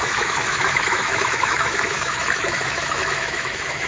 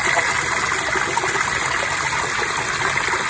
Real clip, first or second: second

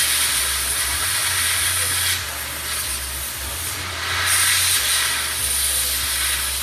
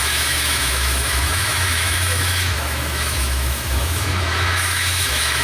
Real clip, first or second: first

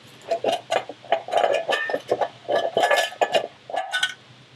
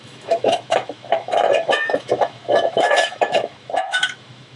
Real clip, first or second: first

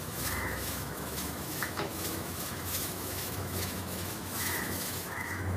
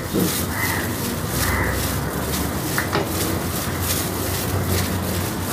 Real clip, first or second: second